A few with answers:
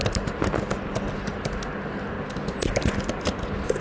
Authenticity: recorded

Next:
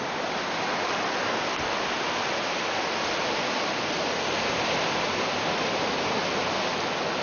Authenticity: recorded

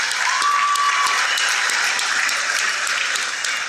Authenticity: recorded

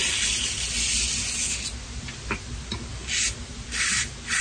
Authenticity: recorded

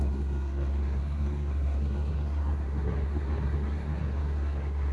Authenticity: remade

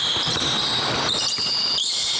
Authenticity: recorded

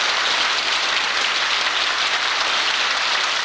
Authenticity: recorded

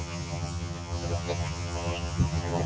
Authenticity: remade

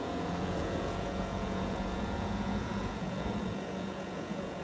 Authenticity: remade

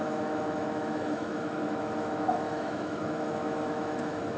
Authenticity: remade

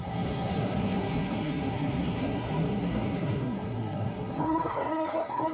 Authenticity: remade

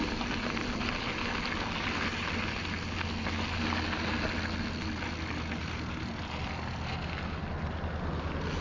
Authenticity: recorded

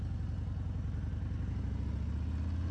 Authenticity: recorded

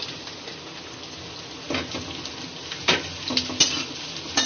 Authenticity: recorded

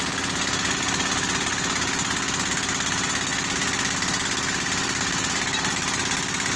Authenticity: recorded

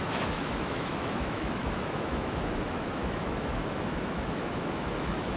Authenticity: remade